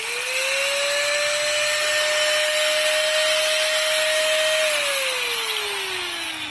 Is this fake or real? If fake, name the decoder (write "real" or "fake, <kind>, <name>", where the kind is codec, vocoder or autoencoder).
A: real